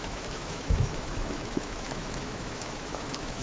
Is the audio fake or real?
fake